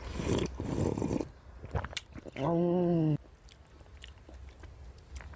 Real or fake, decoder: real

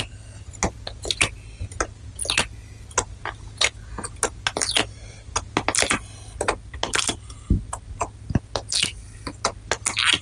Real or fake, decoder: real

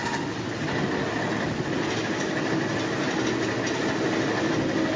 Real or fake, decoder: real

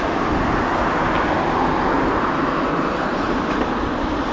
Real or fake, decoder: real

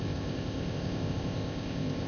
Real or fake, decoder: fake, codec, ZipCodec